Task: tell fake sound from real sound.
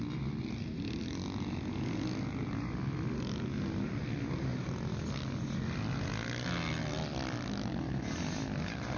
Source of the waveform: real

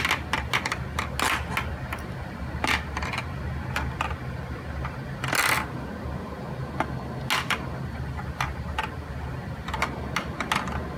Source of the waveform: real